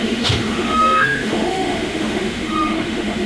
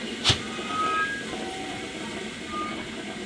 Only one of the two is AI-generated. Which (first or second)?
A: first